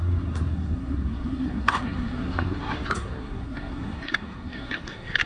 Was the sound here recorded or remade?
remade